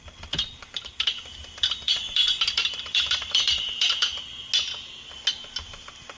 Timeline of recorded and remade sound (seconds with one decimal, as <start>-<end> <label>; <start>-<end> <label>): 0.0-4.1 remade; 4.1-5.3 recorded; 5.3-6.2 remade